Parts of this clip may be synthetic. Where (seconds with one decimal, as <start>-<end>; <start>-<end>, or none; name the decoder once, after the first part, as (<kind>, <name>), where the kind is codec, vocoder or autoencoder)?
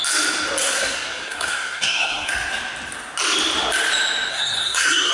0.6-2.3 (codec, SNAC); 4.3-5.1